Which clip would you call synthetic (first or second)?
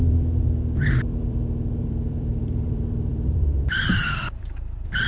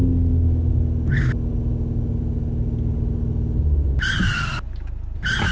first